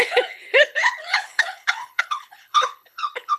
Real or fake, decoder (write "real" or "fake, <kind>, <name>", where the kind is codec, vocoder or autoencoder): fake, codec, HILCodec